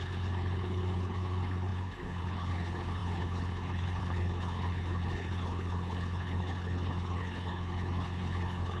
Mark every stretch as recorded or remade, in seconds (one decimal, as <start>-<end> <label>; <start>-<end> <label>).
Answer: 0.0-8.8 remade